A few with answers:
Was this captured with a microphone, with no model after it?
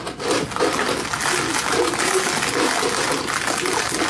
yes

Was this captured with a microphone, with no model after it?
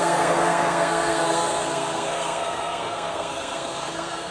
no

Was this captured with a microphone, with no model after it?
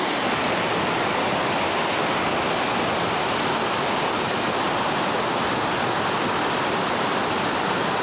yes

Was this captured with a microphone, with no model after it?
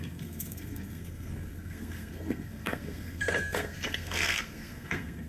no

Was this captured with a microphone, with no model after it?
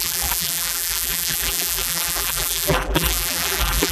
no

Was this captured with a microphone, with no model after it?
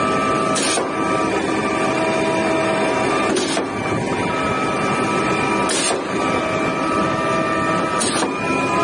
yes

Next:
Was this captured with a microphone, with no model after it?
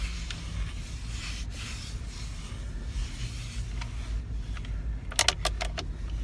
yes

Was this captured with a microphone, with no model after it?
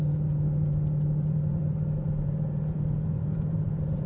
no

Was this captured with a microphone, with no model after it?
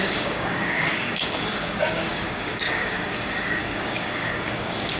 no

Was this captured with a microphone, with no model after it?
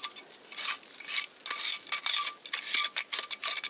yes